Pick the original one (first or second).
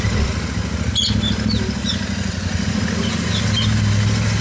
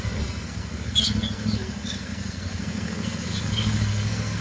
first